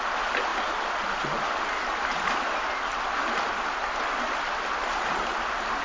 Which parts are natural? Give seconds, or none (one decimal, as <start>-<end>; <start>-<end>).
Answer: 0.0-5.8